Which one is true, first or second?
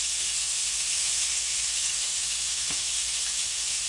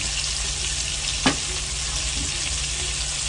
second